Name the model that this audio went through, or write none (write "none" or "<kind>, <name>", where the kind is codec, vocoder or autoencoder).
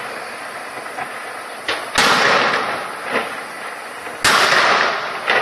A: none